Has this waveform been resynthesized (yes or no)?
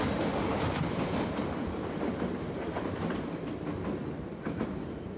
no